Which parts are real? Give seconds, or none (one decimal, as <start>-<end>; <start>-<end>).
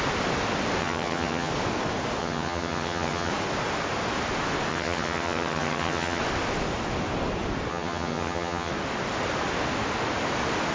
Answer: 0.0-0.8; 1.5-2.2; 3.3-4.7; 6.2-7.7; 8.7-10.7